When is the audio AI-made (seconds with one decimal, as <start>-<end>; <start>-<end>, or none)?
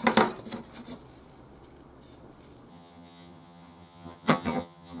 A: 2.7-5.0